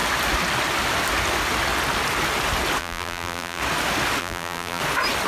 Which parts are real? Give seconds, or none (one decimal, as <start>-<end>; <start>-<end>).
0.0-2.8; 3.6-4.2; 4.8-5.3